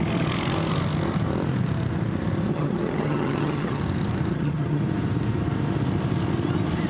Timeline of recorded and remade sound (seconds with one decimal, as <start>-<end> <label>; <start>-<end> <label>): 0.0-2.5 recorded; 2.5-3.8 remade; 3.8-4.3 recorded; 4.3-4.8 remade; 4.8-6.9 recorded